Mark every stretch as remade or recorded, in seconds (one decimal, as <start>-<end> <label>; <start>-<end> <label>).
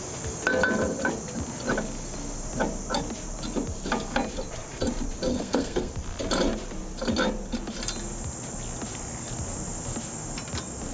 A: 0.0-5.3 recorded; 5.3-5.9 remade; 5.9-10.9 recorded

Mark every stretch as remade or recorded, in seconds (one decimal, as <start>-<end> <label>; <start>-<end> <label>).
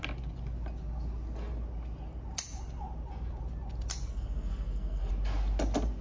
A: 0.0-4.1 recorded; 4.1-5.1 remade; 5.1-6.0 recorded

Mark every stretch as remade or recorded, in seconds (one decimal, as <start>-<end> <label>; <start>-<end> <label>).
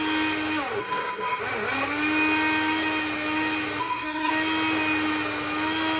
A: 0.0-0.8 recorded; 0.8-1.4 remade; 1.4-3.8 recorded; 3.8-4.3 remade; 4.3-6.0 recorded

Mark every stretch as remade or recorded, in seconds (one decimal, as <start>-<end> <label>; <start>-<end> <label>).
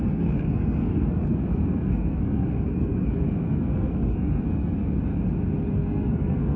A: 0.0-5.1 remade; 5.1-5.7 recorded; 5.7-6.6 remade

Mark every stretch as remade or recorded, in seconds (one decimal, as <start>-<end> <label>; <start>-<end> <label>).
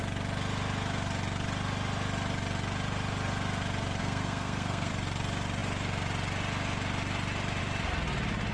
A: 0.0-4.0 recorded; 4.0-4.9 remade; 4.9-8.5 recorded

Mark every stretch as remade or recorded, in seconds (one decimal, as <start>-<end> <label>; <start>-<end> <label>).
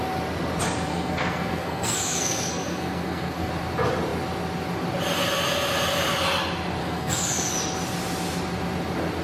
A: 0.0-0.9 recorded; 0.9-3.5 remade; 3.5-6.8 recorded; 6.8-7.5 remade; 7.5-9.2 recorded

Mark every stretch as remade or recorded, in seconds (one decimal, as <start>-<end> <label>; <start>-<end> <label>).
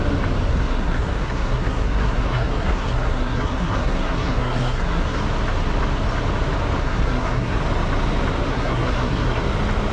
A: 0.0-0.5 recorded; 0.5-5.2 remade; 5.2-6.8 recorded; 6.8-7.6 remade; 7.6-8.5 recorded; 8.5-9.4 remade; 9.4-9.9 recorded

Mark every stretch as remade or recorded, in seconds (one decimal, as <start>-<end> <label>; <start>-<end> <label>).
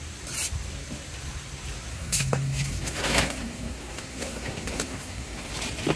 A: 0.0-1.9 recorded; 1.9-5.5 remade; 5.5-6.0 recorded